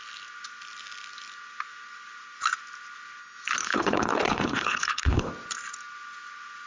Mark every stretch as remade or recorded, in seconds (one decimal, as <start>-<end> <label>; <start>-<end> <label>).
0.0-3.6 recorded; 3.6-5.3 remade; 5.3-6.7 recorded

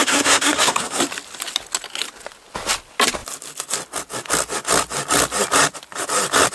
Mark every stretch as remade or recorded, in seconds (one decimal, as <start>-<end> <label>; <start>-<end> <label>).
0.0-1.0 remade; 1.0-6.5 recorded

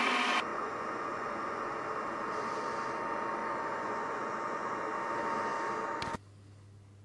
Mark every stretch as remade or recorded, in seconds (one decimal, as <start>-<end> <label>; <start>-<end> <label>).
0.0-0.5 recorded; 0.5-1.8 remade; 1.8-3.4 recorded; 3.4-4.8 remade; 4.8-7.0 recorded